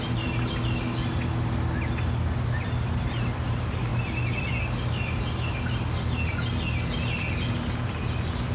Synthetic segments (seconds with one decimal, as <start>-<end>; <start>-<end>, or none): none